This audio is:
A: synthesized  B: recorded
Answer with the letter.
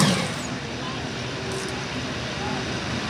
B